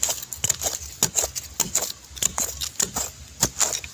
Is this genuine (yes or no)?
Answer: yes